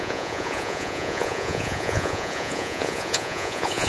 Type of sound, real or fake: fake